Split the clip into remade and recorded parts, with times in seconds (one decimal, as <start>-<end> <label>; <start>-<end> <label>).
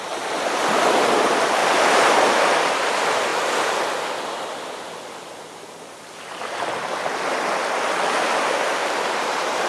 0.0-1.6 recorded; 1.6-2.3 remade; 2.3-8.8 recorded; 8.8-9.7 remade